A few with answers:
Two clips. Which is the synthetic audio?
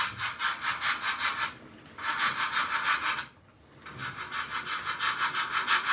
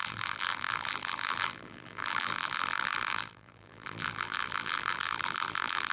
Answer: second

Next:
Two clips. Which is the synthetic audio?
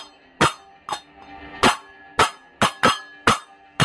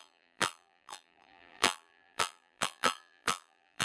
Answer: second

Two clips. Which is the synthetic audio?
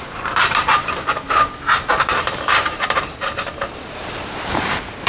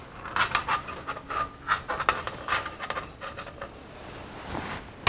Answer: first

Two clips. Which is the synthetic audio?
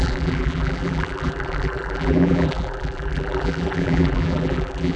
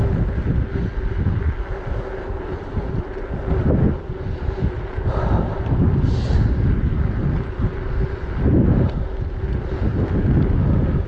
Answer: first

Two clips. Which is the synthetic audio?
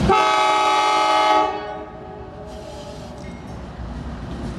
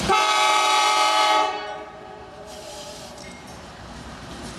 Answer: second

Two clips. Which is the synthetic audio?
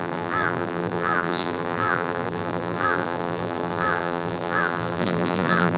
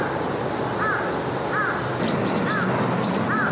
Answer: first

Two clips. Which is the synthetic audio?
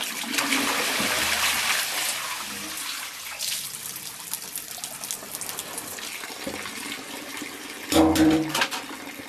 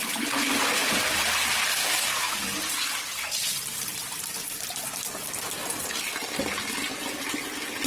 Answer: second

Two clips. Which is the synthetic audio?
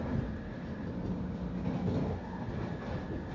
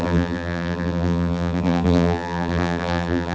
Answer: second